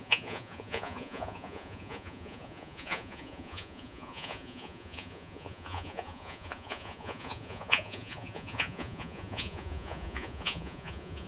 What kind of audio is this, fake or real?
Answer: fake